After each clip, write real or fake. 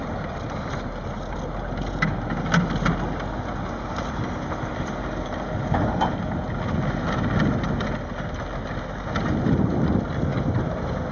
real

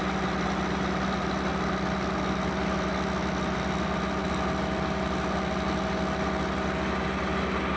real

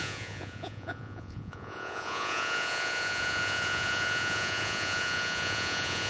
fake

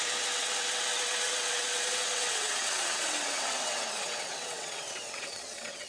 fake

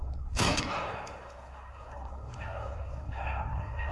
fake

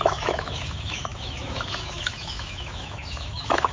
fake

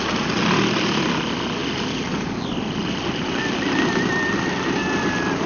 real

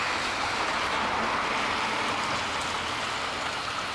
real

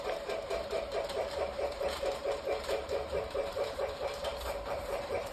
fake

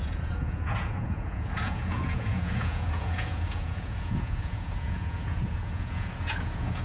fake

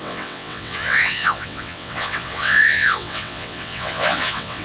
fake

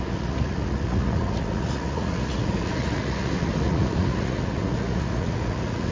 fake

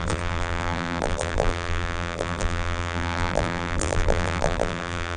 fake